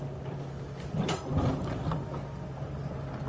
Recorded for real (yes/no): yes